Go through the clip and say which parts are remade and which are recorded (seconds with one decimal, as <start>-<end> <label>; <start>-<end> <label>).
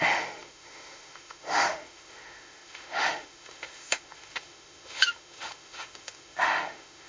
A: 0.0-7.1 remade